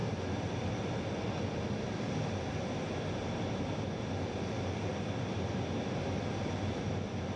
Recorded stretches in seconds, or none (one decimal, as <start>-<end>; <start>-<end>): 0.0-7.4